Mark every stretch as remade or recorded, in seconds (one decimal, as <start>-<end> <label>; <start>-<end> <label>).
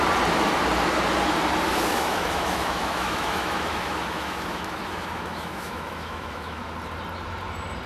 0.0-1.9 recorded; 1.9-6.6 remade; 6.6-7.9 recorded